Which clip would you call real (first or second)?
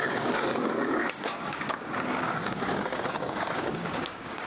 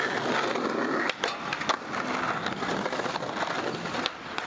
second